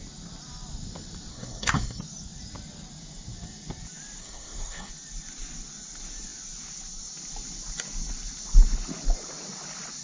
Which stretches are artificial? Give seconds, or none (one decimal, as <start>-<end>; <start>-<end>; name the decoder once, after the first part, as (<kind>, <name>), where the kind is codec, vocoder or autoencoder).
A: 1.3-2.0 (codec, SNAC); 4.2-4.9